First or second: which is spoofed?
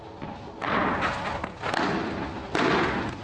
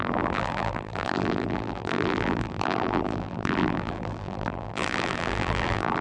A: second